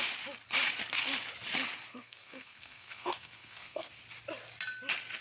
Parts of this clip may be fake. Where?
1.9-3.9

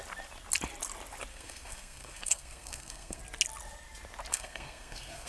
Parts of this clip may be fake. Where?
1.3-3.2; 4.3-5.3

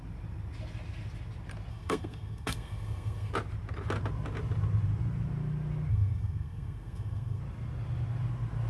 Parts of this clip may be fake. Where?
1.7-3.3; 5.9-7.4

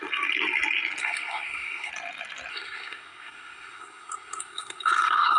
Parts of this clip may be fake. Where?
1.0-1.9; 2.5-5.4

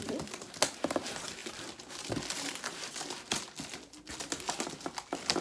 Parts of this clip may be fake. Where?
none